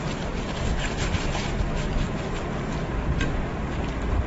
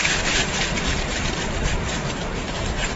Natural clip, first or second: first